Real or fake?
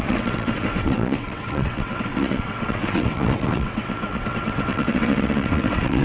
fake